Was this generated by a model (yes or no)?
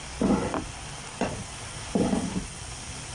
no